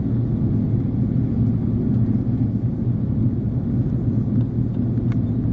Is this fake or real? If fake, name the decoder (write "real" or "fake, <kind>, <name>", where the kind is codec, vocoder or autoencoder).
real